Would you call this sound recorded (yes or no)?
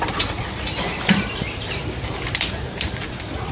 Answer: yes